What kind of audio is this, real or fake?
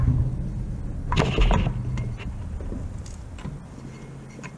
real